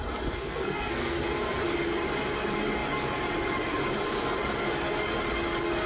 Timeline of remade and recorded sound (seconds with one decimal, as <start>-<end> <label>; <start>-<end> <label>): 0.0-0.4 recorded; 0.4-1.2 remade; 1.2-5.9 recorded